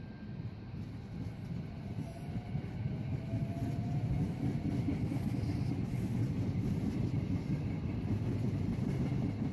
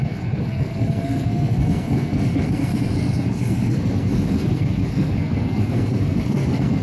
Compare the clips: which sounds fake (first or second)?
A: second